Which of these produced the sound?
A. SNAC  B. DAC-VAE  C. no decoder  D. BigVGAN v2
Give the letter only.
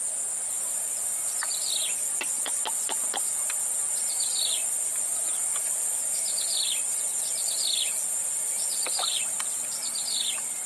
C